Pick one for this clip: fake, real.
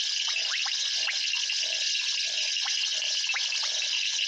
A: fake